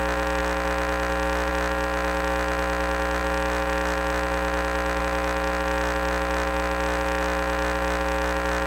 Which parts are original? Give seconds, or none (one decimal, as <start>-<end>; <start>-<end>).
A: 0.0-8.7